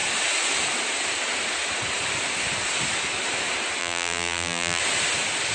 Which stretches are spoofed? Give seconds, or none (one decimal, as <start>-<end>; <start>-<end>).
3.8-4.8